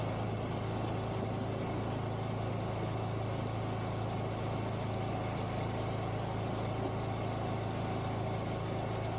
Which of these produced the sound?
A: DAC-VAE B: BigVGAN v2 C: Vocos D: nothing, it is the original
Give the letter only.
D